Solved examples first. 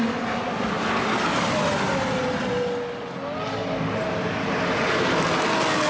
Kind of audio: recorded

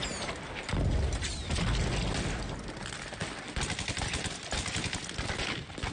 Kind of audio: recorded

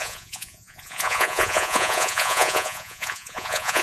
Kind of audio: remade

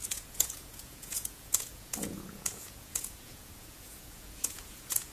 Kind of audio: remade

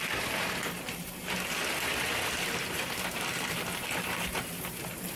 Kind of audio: remade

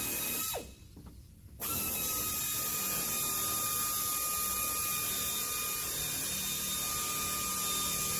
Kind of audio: recorded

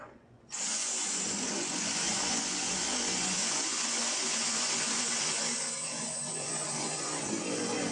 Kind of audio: remade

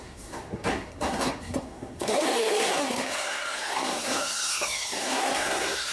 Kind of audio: remade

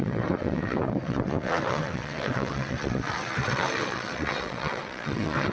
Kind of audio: remade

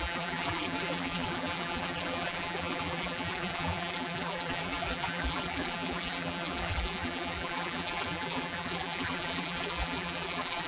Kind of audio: remade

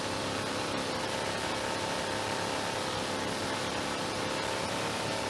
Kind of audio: recorded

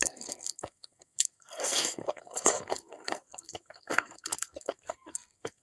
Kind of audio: remade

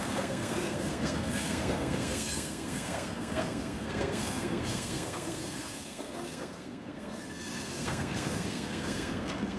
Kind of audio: remade